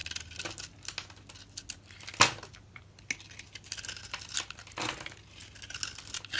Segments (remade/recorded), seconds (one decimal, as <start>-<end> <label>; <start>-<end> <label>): 0.0-6.4 recorded